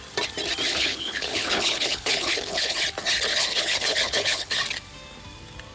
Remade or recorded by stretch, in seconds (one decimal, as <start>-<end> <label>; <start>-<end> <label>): 0.0-0.7 recorded; 0.7-2.8 remade; 2.8-3.3 recorded; 3.3-4.6 remade; 4.6-5.7 recorded